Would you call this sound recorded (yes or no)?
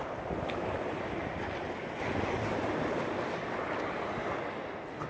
yes